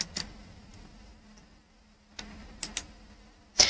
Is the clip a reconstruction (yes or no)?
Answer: no